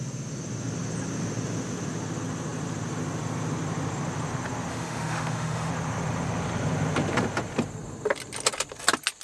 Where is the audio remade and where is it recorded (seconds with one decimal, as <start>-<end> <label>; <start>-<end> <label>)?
0.0-4.7 recorded; 4.7-5.7 remade; 5.7-9.2 recorded